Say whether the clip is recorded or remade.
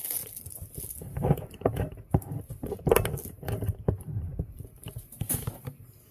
recorded